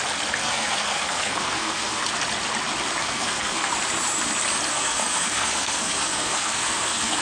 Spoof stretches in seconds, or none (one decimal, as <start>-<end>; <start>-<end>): 0.4-2.0; 3.0-3.7; 4.7-7.2